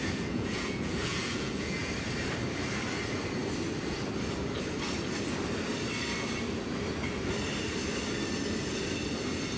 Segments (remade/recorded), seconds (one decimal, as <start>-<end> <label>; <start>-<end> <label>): 0.0-1.9 remade; 1.9-9.6 recorded

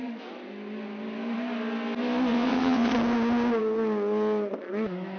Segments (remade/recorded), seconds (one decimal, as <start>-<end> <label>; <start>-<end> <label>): 0.0-2.3 recorded; 2.3-2.9 remade; 2.9-5.2 recorded